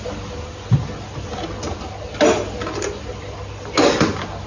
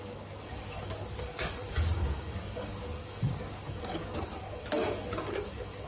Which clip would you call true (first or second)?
first